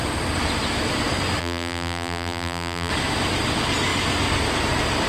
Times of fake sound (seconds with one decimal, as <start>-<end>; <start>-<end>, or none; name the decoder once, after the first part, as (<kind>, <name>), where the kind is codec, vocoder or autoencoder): 1.4-2.9 (vocoder, BigVGAN v2)